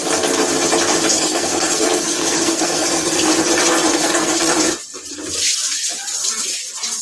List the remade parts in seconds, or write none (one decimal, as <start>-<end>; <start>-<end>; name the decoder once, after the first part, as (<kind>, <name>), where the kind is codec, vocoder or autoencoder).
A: 1.1-3.3 (codec, SNAC); 3.9-4.4